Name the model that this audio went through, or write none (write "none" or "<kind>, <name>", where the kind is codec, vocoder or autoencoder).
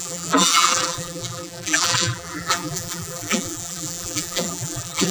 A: vocoder, BigVGAN v2